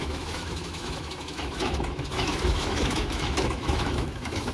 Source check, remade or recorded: remade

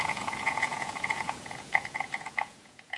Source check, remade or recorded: remade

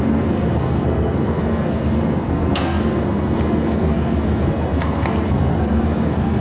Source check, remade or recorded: remade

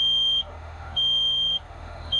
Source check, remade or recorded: remade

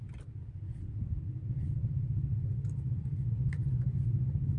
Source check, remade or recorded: recorded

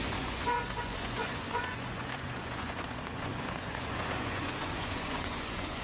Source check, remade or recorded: remade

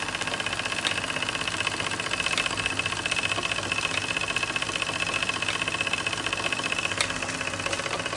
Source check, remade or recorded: recorded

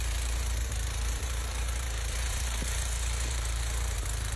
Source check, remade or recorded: remade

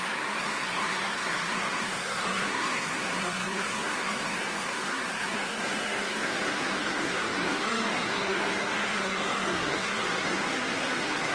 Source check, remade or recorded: remade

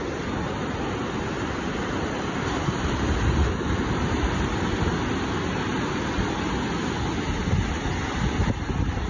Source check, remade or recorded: recorded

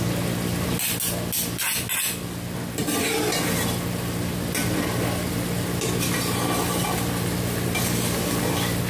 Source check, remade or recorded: recorded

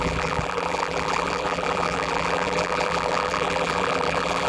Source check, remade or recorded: remade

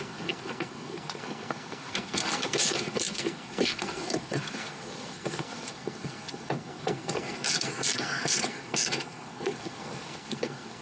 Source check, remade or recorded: remade